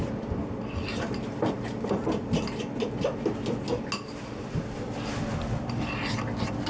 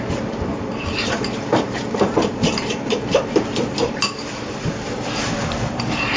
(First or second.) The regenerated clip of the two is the second